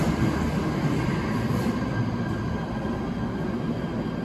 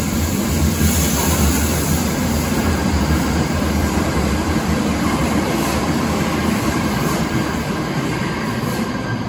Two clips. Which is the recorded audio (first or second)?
first